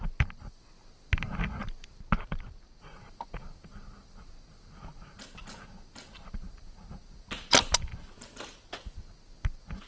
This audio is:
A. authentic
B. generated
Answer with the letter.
A